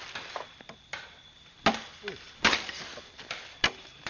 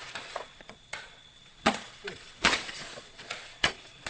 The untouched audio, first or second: first